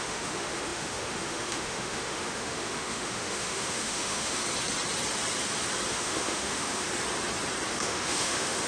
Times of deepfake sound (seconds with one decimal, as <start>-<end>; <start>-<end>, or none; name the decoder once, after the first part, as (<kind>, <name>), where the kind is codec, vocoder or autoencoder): 0.0-4.4 (autoencoder, DAC-VAE); 5.9-6.9; 7.7-8.7